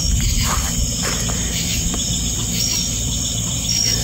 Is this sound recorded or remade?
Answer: remade